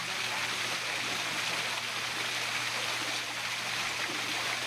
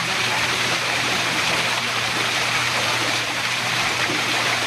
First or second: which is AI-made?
second